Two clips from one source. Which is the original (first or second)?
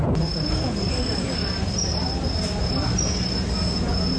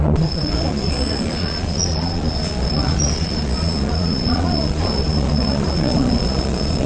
first